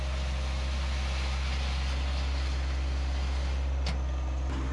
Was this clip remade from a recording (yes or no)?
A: no